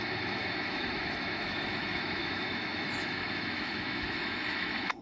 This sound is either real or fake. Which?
fake